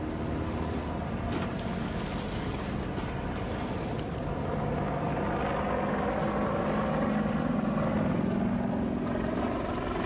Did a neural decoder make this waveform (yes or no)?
no